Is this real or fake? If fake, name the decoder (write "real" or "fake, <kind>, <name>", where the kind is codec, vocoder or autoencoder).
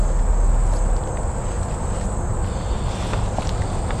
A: real